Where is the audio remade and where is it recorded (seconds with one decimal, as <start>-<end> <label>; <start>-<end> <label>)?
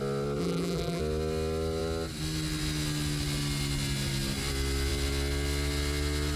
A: 0.0-0.4 recorded; 0.4-1.0 remade; 1.0-6.4 recorded